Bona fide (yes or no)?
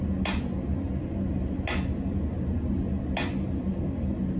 yes